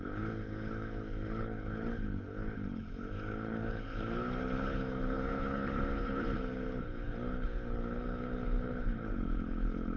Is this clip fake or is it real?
fake